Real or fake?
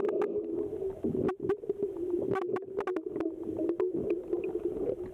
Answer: real